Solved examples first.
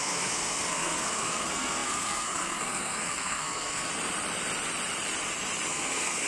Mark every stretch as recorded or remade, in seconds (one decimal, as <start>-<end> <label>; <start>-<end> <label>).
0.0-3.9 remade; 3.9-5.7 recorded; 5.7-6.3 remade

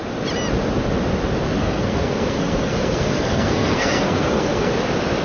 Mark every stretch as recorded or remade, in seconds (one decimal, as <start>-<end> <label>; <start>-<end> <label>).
0.0-1.6 recorded; 1.6-4.7 remade; 4.7-5.2 recorded

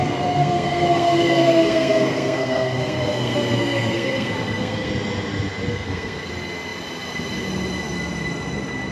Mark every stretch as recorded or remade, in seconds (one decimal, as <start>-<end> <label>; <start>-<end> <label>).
0.0-4.9 remade; 4.9-5.7 recorded; 5.7-6.3 remade; 6.3-8.9 recorded